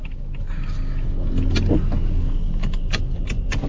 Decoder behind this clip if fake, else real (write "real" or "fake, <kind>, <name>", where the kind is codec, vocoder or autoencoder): real